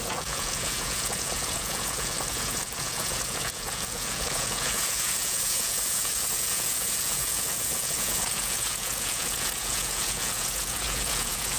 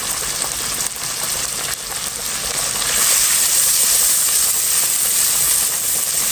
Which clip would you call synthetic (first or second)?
first